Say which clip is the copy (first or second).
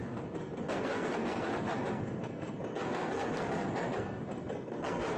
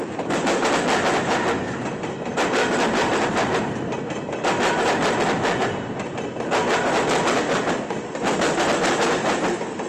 first